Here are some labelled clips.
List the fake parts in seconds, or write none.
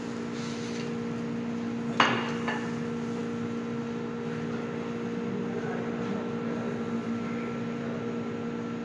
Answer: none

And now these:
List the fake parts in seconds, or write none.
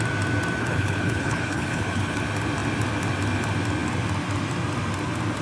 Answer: 0.6-2.2 (codec, HILCodec)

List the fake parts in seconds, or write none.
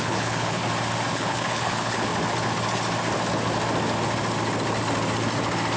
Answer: 0.0-0.6 (codec, HILCodec); 1.1-2.1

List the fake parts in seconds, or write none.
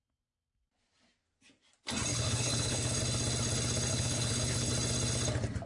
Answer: 2.1-3.0 (codec, HILCodec); 3.9-4.7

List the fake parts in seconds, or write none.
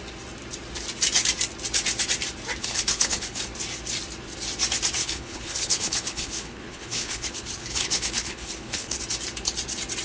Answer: 2.6-3.4 (codec, HILCodec); 5.0-9.0